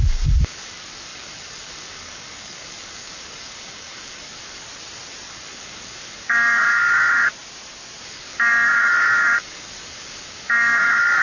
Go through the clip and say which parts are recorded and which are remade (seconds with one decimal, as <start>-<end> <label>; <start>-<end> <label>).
0.0-4.6 remade; 4.6-5.3 recorded; 5.3-7.3 remade; 7.3-8.0 recorded; 8.0-11.2 remade